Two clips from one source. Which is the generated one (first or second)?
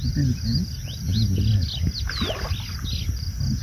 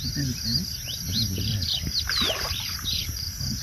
second